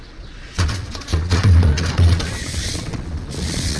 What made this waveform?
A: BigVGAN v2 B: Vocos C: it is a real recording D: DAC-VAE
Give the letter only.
B